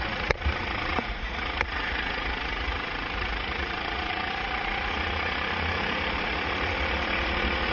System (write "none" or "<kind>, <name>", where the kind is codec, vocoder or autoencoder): vocoder, Vocos